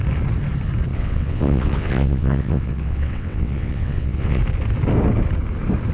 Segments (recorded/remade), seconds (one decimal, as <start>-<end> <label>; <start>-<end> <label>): 0.0-0.9 recorded; 0.9-4.4 remade; 4.4-5.9 recorded